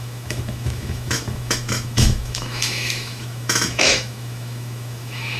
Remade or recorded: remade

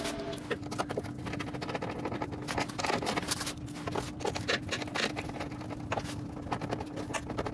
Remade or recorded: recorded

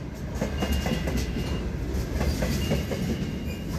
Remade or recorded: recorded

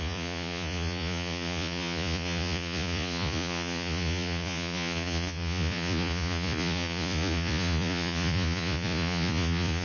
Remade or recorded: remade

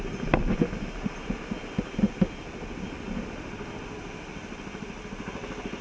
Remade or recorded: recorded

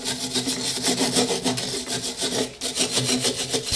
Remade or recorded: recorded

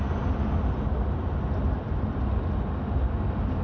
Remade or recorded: recorded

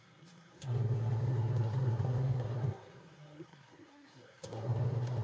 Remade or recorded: remade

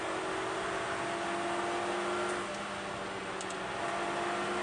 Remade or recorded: recorded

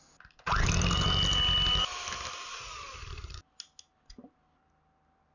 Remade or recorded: recorded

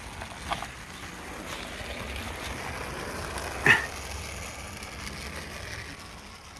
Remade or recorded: recorded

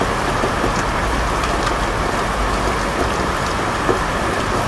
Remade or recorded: recorded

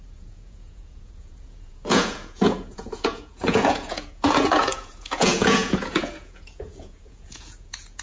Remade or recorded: remade